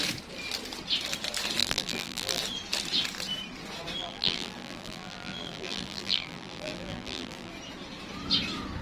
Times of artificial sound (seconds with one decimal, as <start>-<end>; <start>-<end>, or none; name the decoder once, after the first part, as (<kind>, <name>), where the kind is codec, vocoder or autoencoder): 1.6-2.4 (vocoder, BigVGAN v2); 4.0-7.5